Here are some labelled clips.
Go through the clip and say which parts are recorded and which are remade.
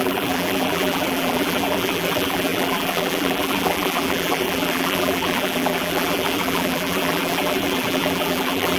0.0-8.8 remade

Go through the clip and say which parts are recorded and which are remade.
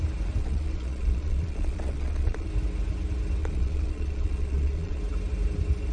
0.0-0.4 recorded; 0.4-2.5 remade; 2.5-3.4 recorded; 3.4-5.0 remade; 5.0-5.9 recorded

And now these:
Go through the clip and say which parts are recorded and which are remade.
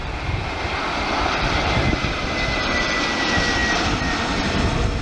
0.0-3.0 remade; 3.0-3.6 recorded; 3.6-5.0 remade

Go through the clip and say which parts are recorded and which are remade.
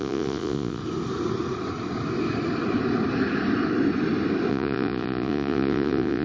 0.0-0.8 remade; 0.8-4.5 recorded; 4.5-6.2 remade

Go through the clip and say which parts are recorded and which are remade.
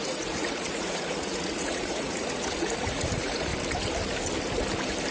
0.0-3.5 remade; 3.5-5.1 recorded